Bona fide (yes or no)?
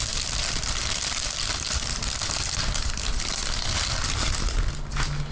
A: yes